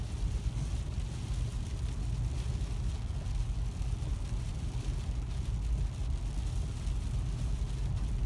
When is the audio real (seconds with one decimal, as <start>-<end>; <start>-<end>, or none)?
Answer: 0.0-8.3